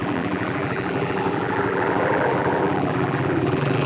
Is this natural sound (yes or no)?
no